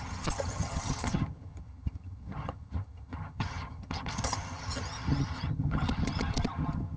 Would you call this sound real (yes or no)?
no